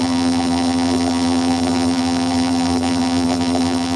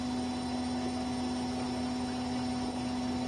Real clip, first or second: second